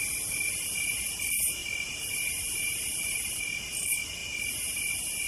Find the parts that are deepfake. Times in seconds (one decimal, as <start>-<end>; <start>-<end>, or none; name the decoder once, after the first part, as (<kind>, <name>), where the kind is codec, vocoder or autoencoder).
1.6-3.3 (vocoder, BigVGAN v2)